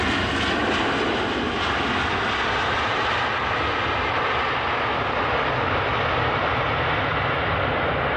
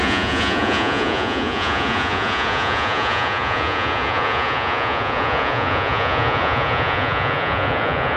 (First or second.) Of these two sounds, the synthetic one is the second